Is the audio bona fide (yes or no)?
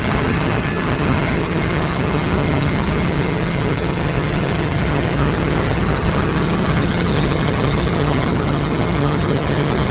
no